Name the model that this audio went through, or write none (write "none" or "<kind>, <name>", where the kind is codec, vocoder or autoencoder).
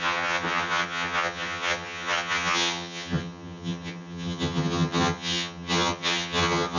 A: vocoder, HiFi-GAN